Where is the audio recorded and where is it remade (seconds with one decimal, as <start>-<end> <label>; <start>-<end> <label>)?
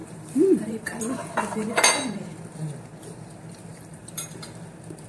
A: 0.0-1.0 remade; 1.0-3.7 recorded; 3.7-4.3 remade; 4.3-5.1 recorded